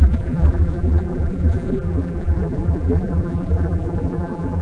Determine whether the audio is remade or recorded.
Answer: remade